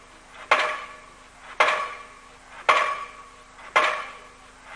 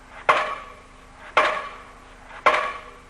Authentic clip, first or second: first